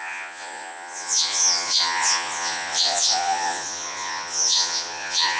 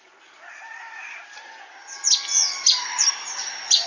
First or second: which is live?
second